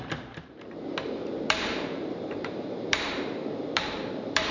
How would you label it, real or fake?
fake